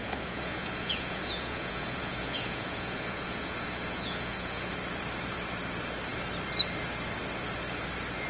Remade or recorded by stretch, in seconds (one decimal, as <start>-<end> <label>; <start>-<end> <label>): 0.0-4.7 remade; 4.7-8.3 recorded